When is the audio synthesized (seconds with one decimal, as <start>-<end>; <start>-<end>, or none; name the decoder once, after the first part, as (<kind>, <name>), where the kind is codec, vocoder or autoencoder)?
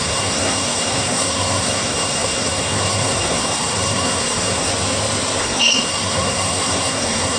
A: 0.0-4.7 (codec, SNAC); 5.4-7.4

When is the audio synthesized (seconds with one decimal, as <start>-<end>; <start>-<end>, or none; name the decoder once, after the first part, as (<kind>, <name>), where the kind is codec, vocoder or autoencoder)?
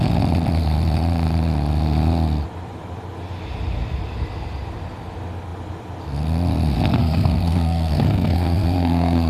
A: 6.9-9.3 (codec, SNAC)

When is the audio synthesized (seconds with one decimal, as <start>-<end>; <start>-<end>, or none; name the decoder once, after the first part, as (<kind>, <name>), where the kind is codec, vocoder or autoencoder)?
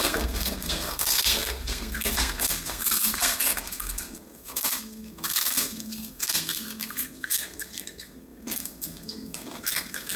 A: 0.0-10.2 (codec, SNAC)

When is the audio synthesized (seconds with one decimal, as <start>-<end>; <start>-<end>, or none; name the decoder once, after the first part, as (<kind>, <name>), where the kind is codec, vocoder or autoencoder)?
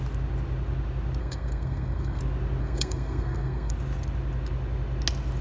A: 1.2-2.2 (codec, SNAC); 2.6-3.7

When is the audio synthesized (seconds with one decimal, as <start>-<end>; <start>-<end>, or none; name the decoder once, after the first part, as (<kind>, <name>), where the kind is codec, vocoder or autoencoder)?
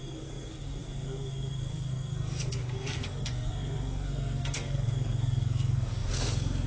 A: 0.0-6.7 (codec, SNAC)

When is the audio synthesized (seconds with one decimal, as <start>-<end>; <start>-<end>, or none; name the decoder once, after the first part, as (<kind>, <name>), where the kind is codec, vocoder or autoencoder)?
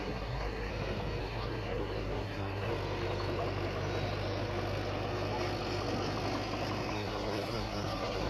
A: 0.0-0.7 (codec, SNAC); 1.2-2.7; 6.9-8.3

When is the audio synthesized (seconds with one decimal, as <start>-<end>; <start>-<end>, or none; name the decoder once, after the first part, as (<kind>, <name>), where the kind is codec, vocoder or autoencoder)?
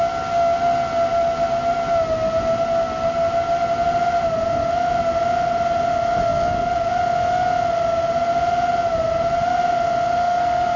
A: 10.2-10.8 (codec, SNAC)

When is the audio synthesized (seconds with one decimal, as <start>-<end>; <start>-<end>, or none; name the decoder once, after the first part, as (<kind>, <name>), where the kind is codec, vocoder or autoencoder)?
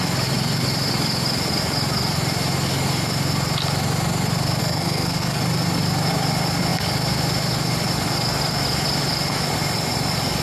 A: 4.6-5.4 (codec, SNAC)